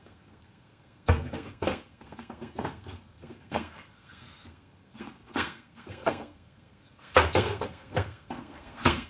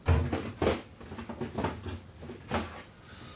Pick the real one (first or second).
second